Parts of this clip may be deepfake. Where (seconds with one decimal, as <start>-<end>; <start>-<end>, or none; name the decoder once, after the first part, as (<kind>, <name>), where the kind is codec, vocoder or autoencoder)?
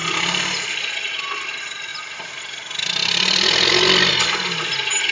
1.9-2.4 (vocoder, BigVGAN v2); 3.0-4.1